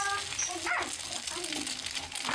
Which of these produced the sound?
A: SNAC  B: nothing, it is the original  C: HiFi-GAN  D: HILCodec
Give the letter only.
B